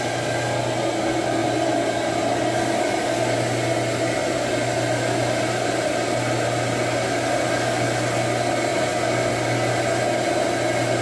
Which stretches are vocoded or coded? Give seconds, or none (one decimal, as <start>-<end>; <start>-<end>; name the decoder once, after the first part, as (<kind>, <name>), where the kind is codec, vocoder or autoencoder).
1.4-2.4 (vocoder, BigVGAN v2)